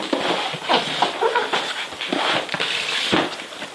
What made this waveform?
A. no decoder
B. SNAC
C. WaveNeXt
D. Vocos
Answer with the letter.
A